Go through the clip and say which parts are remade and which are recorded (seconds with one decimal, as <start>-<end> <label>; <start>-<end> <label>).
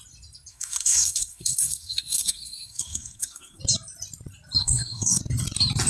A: 0.0-0.5 recorded; 0.5-3.6 remade; 3.6-4.6 recorded; 4.6-5.2 remade; 5.2-5.9 recorded